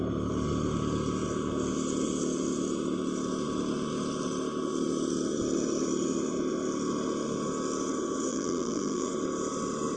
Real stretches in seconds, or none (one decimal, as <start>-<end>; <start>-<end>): 0.0-8.3; 9.1-10.0